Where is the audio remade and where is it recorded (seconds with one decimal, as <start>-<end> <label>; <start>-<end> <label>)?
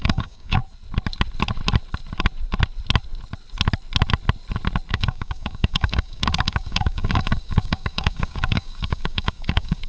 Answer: 0.0-0.6 remade; 0.6-4.9 recorded; 4.9-9.9 remade